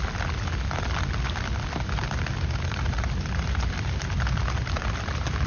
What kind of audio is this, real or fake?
real